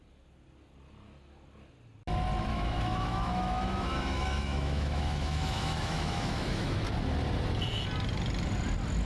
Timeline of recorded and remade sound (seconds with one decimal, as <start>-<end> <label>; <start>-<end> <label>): 0.0-2.5 recorded; 2.5-6.8 remade; 6.8-9.0 recorded